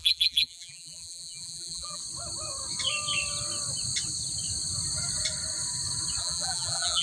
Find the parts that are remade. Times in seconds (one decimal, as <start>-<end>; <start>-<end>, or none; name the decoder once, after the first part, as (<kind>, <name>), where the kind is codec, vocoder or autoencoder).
0.0-2.0 (vocoder, BigVGAN v2); 6.2-7.0